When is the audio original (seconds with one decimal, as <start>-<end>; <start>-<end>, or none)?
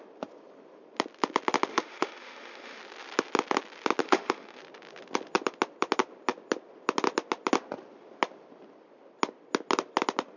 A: 0.0-1.7; 2.8-4.0; 4.6-10.4